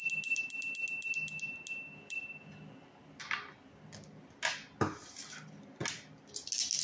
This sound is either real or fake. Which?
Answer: real